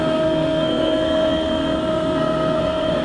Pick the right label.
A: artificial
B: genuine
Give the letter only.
A